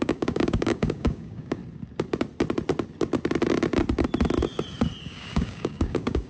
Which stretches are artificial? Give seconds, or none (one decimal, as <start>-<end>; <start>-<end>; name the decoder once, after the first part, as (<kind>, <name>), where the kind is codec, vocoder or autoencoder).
0.0-1.6 (codec, DAC); 5.0-6.3